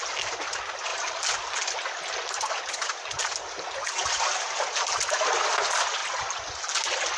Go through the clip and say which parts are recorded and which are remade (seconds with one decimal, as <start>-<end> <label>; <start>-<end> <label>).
0.0-7.2 recorded